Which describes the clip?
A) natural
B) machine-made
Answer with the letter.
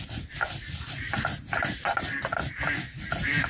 A